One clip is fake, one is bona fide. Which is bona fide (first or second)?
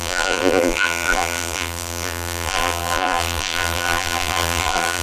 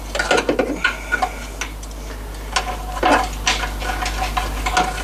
second